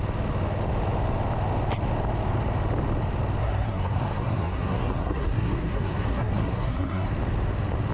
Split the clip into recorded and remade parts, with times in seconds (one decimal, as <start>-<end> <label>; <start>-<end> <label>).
0.0-3.4 recorded; 3.4-7.1 remade; 7.1-7.9 recorded